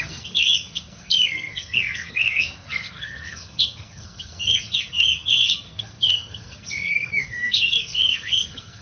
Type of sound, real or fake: fake